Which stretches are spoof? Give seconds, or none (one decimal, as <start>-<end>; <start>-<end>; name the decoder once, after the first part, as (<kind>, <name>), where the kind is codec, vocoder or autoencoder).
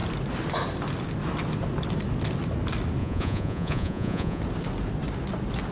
3.0-4.4 (vocoder, Vocos)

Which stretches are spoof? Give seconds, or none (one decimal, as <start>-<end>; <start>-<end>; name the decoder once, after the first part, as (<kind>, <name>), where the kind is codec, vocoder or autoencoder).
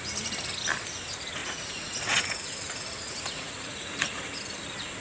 1.4-4.4 (vocoder, Vocos)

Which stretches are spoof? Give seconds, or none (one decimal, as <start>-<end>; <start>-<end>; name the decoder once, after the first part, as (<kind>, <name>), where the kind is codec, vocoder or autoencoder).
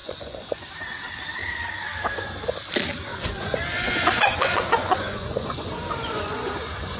0.0-0.7 (vocoder, Vocos); 3.1-7.0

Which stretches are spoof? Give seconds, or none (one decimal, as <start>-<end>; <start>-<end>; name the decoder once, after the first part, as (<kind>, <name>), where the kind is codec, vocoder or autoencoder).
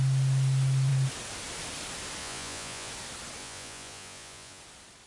2.2-2.9 (vocoder, Vocos); 3.4-4.6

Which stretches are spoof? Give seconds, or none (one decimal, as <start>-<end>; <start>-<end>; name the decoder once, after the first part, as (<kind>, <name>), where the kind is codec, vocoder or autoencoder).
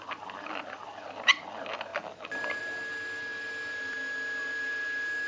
none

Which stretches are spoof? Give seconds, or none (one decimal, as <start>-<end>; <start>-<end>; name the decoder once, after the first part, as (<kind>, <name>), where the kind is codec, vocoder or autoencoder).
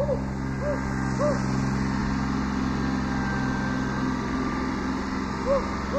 none